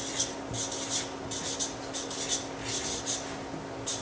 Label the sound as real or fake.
real